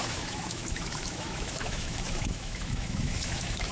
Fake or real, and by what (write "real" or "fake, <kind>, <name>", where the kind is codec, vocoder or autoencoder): fake, autoencoder, DAC-VAE